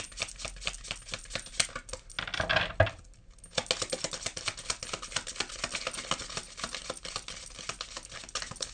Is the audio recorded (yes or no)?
yes